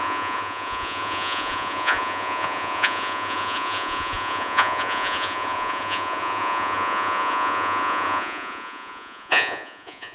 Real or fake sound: fake